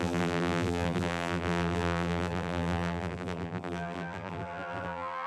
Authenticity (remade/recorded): remade